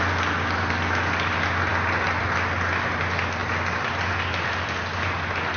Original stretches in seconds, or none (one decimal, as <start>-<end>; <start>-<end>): 0.0-5.6